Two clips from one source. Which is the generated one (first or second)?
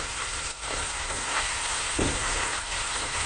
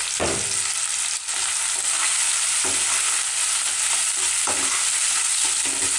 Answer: first